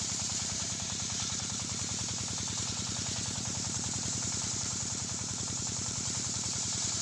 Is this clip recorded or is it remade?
remade